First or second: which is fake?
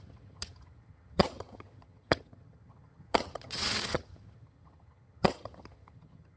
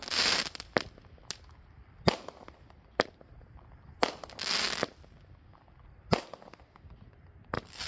first